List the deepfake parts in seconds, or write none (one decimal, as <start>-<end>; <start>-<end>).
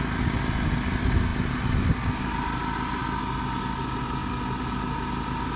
none